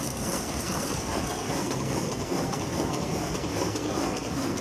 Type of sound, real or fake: fake